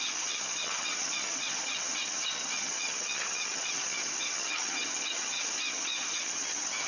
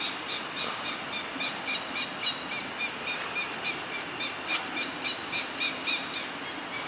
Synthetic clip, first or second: first